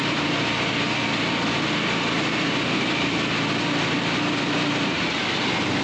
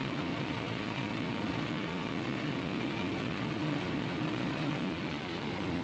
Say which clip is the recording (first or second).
first